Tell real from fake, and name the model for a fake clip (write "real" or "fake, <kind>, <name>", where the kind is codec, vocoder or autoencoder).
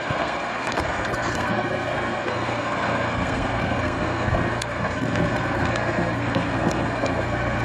fake, codec, SNAC